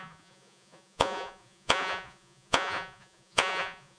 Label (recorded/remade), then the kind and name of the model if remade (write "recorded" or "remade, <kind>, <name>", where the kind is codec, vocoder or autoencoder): remade, vocoder, Vocos